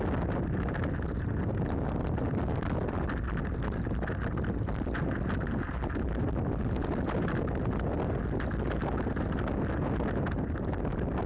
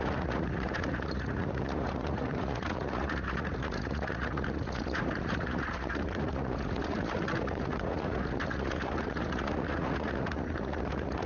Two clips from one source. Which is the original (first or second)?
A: first